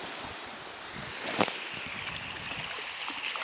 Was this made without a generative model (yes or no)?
yes